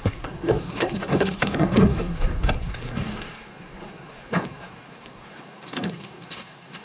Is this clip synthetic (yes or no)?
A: yes